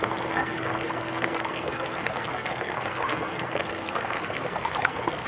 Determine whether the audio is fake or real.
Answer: fake